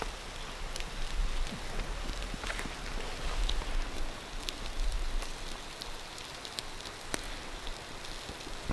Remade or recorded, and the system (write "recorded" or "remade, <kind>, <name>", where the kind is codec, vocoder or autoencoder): recorded